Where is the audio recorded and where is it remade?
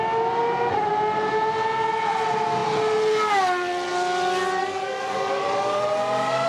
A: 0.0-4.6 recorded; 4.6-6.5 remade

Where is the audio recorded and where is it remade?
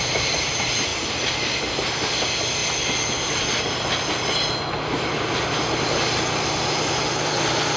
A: 0.0-7.8 recorded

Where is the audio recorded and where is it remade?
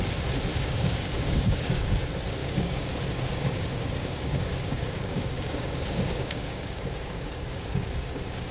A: 0.0-0.5 recorded; 0.5-2.0 remade; 2.0-2.4 recorded; 2.4-2.9 remade; 2.9-3.3 recorded; 3.3-8.5 remade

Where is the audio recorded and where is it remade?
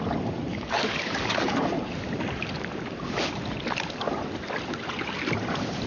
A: 0.0-0.5 recorded; 0.5-1.6 remade; 1.6-5.9 recorded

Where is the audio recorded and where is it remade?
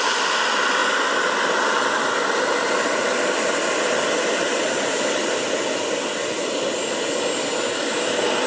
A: 0.0-8.5 recorded